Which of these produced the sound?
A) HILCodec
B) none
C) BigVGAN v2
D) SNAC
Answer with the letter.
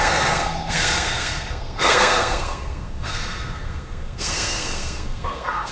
D